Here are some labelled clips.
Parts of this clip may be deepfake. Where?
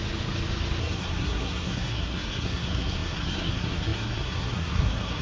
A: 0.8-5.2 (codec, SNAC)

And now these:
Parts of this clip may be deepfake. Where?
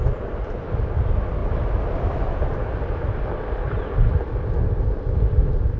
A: none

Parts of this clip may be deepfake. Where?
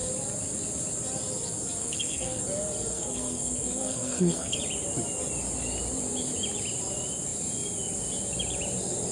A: 1.8-2.4 (codec, SNAC); 2.9-4.6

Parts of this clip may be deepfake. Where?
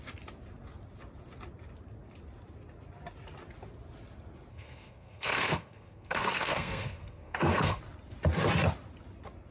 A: 4.5-7.8 (codec, SNAC)